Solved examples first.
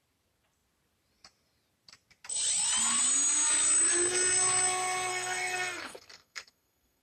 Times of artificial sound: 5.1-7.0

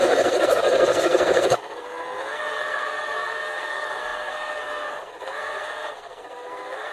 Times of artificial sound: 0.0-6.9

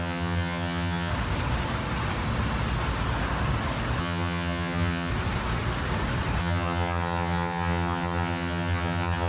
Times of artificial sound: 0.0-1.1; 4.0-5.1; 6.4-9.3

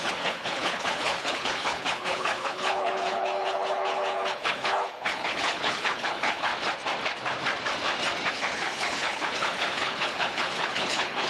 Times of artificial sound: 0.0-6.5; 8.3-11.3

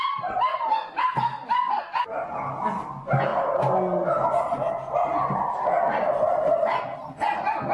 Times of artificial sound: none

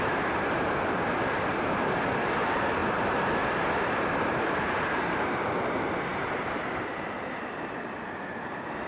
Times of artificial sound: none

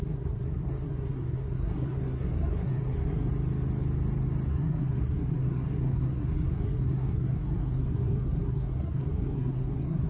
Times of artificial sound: 0.0-3.3; 4.5-10.1

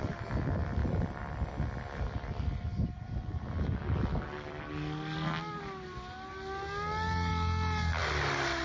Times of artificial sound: none